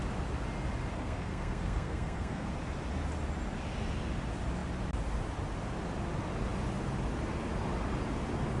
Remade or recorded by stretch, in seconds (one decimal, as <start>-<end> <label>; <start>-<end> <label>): 0.0-0.9 recorded; 0.9-2.5 remade; 2.5-8.6 recorded

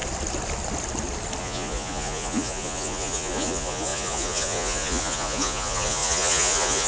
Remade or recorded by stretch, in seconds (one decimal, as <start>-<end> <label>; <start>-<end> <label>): 0.0-1.4 recorded; 1.4-6.9 remade

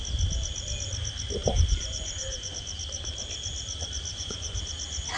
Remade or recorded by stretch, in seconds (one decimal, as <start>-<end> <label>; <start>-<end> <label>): 0.0-1.4 recorded; 1.4-2.5 remade; 2.5-4.1 recorded; 4.1-4.6 remade; 4.6-5.2 recorded

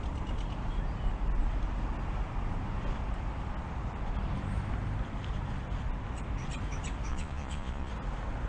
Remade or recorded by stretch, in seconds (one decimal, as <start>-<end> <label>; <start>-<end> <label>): 0.0-7.1 recorded; 7.1-7.9 remade; 7.9-8.5 recorded